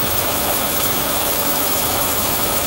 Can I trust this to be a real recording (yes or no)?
no